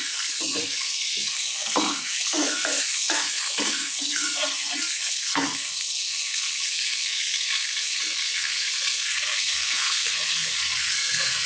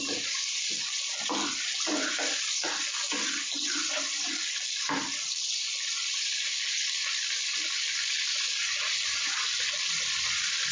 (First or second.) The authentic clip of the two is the second